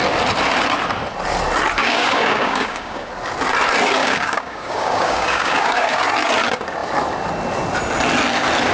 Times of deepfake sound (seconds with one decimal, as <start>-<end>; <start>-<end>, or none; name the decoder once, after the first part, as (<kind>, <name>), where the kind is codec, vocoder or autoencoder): 1.8-3.1 (codec, DAC); 4.0-6.0